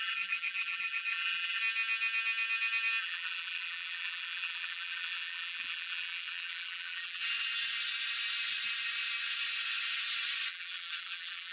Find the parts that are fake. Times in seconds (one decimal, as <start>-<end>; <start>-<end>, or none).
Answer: 0.0-1.6; 3.0-7.2; 10.5-11.5